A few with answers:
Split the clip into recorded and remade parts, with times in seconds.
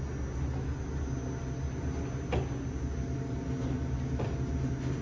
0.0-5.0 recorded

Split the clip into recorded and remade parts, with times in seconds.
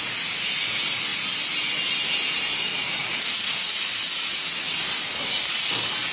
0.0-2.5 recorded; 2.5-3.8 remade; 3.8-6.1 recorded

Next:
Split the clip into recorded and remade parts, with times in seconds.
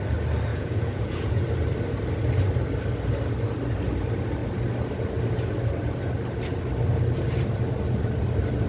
0.0-0.5 recorded; 0.5-1.4 remade; 1.4-8.7 recorded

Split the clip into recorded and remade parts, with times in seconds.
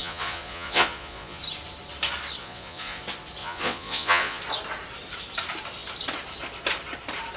0.0-1.4 remade; 1.4-2.4 recorded; 2.4-3.0 remade; 3.0-3.4 recorded; 3.4-4.4 remade; 4.4-7.4 recorded